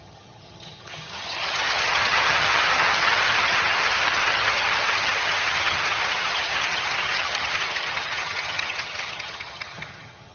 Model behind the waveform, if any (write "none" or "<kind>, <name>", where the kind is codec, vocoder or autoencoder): vocoder, HiFi-GAN